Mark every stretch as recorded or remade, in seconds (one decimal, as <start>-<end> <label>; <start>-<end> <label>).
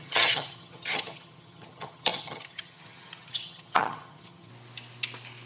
0.0-4.5 remade; 4.5-5.5 recorded